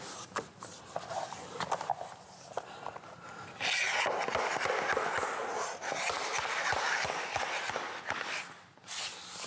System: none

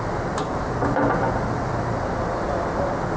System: none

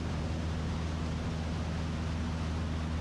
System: none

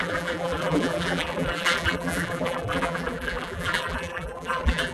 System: vocoder, BigVGAN v2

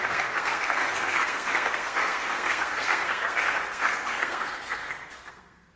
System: codec, SNAC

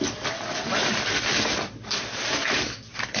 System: none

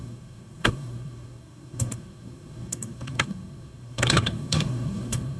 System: codec, SNAC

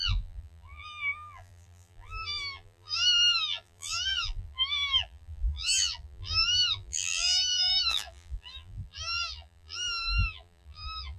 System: vocoder, BigVGAN v2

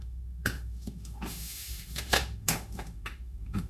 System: autoencoder, DAC-VAE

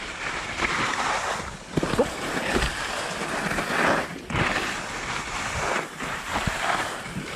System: none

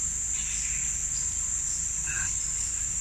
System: none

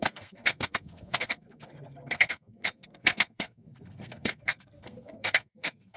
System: codec, SNAC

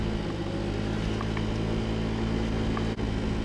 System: none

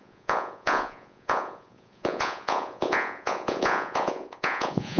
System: vocoder, Vocos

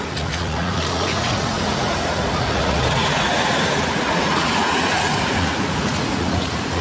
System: vocoder, Vocos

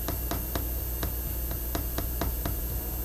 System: none